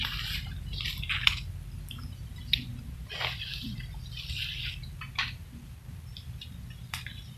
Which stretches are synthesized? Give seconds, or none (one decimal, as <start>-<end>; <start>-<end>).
2.7-7.4